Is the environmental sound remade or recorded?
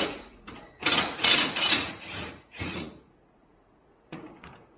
remade